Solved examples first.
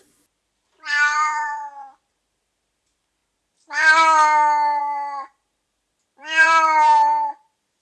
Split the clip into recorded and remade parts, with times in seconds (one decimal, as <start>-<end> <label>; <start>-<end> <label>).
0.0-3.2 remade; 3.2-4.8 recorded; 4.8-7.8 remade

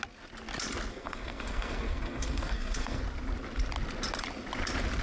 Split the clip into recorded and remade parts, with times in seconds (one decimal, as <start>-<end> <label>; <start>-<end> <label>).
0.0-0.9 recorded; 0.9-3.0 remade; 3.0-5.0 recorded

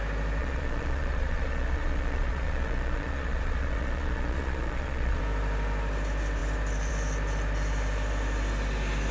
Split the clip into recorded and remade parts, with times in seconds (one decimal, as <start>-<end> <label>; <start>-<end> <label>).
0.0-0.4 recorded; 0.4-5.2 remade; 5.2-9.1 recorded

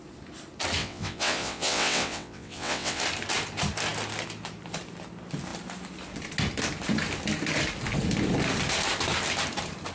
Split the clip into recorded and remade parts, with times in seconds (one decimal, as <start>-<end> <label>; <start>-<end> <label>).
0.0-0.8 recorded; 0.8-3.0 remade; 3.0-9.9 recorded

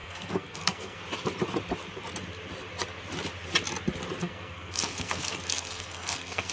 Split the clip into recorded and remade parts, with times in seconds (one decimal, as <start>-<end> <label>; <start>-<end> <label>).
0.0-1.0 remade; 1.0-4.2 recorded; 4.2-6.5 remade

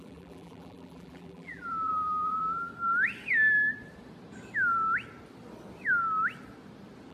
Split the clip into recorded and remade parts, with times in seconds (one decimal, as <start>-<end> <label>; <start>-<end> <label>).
0.0-2.7 remade; 2.7-7.1 recorded

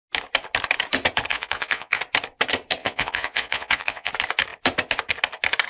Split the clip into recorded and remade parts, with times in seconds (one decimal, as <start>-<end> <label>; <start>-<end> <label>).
0.0-1.3 recorded; 1.3-2.0 remade; 2.0-2.8 recorded; 2.8-4.1 remade; 4.1-5.7 recorded